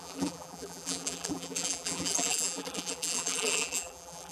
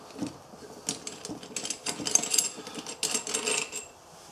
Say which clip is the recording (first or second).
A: second